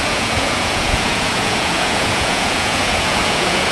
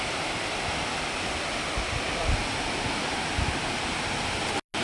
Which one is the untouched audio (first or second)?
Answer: second